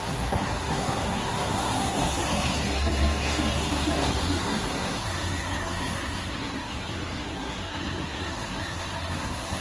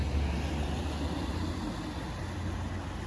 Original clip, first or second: second